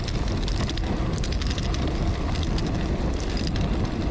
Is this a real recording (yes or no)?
yes